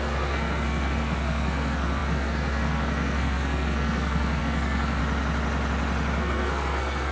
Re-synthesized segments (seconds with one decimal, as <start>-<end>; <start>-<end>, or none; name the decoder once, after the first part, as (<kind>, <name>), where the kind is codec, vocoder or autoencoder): 0.0-5.0 (codec, SNAC); 6.2-7.1